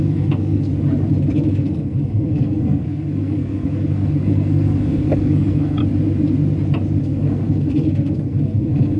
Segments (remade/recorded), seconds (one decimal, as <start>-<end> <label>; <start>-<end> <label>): 0.0-0.7 remade; 0.7-1.3 recorded; 1.3-5.8 remade; 5.8-7.0 recorded; 7.0-9.0 remade